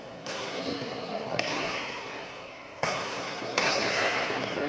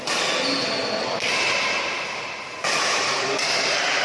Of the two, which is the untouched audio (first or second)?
second